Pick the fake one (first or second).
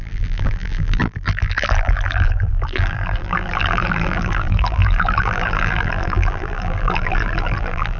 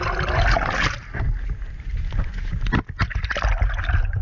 first